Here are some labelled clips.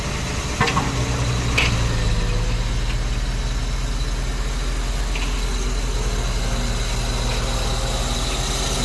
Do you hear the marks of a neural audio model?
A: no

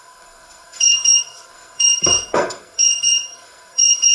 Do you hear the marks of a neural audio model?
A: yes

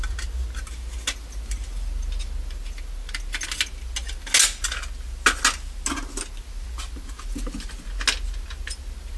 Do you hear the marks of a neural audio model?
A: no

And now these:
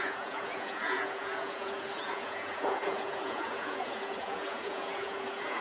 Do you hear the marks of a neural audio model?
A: yes